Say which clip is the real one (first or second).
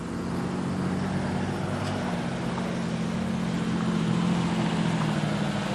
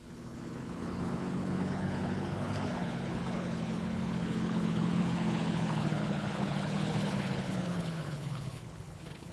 first